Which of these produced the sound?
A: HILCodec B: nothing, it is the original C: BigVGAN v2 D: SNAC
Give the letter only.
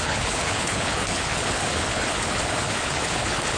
A